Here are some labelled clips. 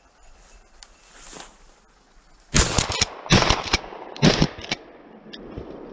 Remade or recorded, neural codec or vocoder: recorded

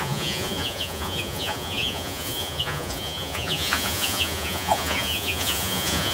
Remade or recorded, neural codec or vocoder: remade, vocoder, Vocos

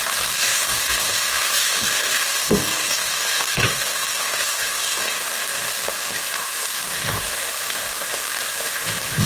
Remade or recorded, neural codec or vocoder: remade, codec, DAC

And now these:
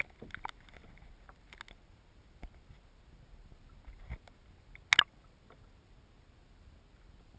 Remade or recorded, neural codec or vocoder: recorded